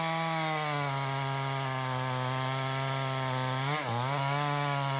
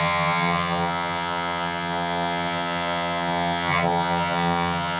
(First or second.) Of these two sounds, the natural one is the first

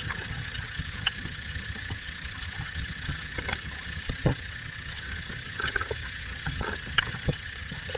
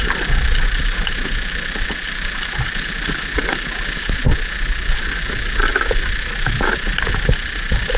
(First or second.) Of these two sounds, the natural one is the second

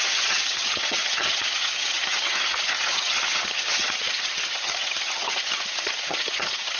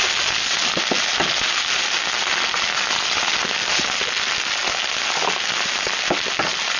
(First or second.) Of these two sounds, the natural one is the second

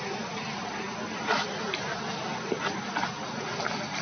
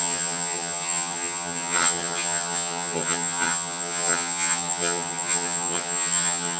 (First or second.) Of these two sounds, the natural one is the first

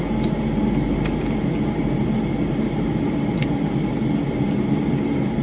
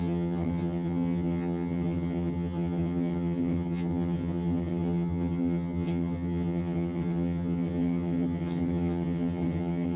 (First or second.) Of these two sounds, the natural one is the first